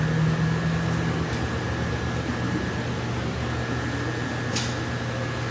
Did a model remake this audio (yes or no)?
no